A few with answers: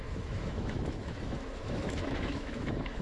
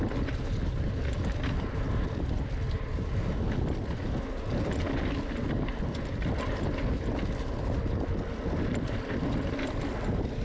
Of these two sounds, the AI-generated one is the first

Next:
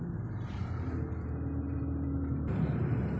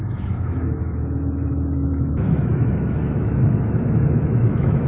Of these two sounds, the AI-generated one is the second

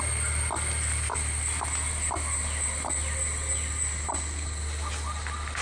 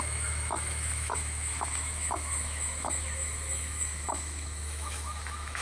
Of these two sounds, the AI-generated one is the second